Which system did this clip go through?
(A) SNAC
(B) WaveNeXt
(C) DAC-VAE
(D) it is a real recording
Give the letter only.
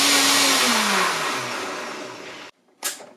D